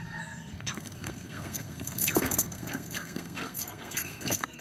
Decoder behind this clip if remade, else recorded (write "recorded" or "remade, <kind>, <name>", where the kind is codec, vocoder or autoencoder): remade, codec, SNAC